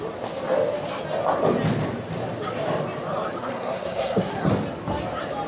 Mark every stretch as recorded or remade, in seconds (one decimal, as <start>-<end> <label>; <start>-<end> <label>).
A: 0.0-3.4 recorded; 3.4-4.5 remade; 4.5-5.5 recorded